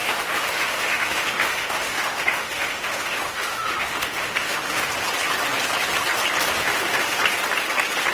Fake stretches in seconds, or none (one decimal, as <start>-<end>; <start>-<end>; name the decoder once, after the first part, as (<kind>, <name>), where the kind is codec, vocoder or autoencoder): 0.0-4.9 (autoencoder, DAC-VAE); 6.6-7.2